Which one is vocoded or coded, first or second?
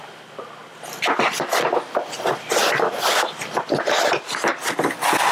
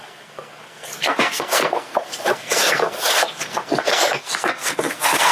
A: second